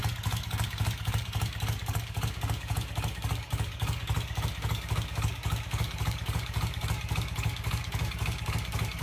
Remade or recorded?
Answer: remade